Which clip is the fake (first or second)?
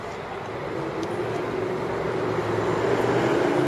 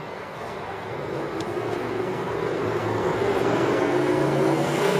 second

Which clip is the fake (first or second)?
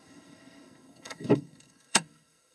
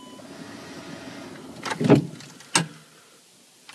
first